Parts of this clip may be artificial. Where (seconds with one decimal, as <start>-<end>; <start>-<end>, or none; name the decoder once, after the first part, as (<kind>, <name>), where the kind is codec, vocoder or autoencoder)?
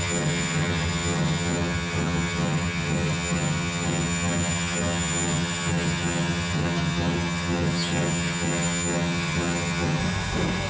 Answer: 0.0-10.0 (vocoder, HiFi-GAN)